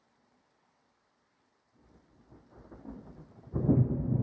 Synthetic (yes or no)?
no